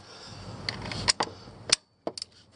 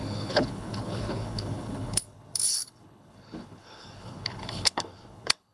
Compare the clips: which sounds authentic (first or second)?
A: first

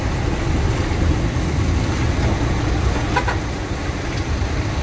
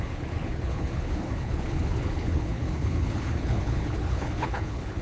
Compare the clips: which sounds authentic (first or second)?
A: first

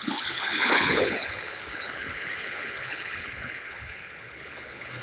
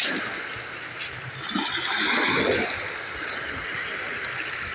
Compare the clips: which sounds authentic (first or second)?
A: second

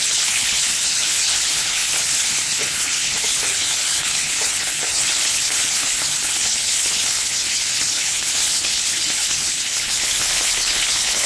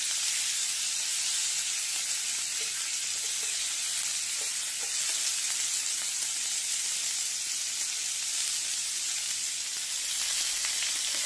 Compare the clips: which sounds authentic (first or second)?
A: second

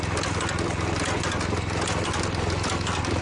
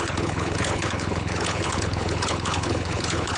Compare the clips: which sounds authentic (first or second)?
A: first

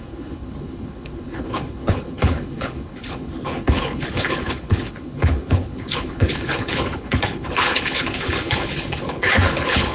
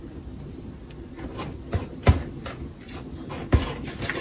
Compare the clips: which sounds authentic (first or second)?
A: second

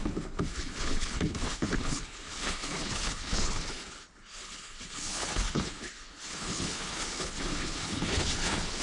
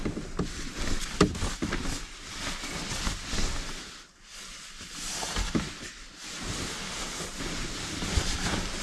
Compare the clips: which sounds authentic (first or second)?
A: second